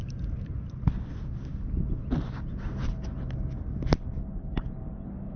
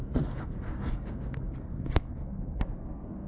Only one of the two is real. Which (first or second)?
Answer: first